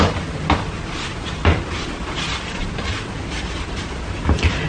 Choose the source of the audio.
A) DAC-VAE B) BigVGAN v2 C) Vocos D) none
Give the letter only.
D